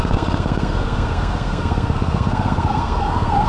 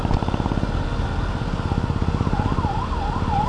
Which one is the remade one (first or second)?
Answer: first